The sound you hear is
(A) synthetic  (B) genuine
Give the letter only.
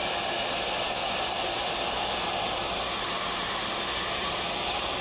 B